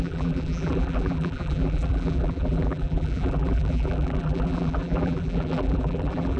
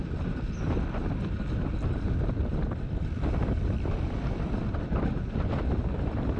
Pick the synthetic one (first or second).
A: first